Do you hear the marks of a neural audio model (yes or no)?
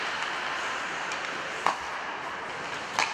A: no